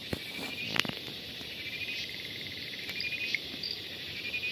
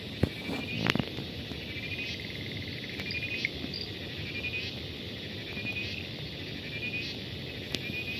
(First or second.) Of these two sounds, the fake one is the first